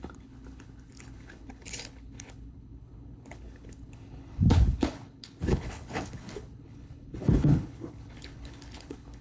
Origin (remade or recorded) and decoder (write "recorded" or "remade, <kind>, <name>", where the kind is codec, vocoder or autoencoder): remade, codec, HILCodec